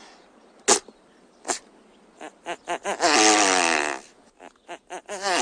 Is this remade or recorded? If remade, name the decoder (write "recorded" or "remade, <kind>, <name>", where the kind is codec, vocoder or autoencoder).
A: recorded